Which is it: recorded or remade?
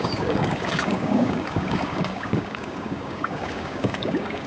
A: remade